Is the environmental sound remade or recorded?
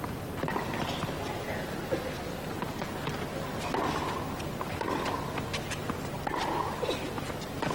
recorded